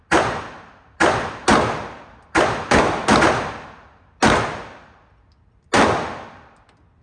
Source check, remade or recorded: recorded